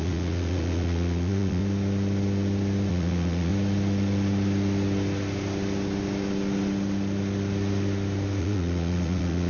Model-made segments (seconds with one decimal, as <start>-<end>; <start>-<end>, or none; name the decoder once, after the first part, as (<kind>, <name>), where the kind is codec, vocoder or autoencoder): 0.0-1.6 (vocoder, Vocos); 2.9-3.5; 8.4-9.5